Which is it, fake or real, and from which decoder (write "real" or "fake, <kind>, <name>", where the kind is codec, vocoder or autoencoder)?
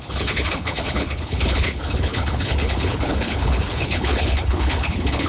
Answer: fake, codec, HILCodec